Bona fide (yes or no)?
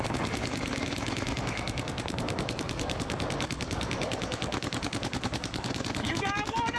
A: no